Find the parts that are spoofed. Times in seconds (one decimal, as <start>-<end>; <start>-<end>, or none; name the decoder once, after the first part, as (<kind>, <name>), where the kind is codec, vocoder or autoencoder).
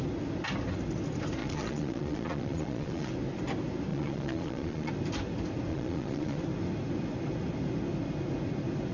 1.4-3.1 (vocoder, Vocos); 3.9-4.9; 5.7-6.4